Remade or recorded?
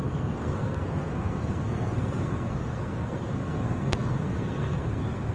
remade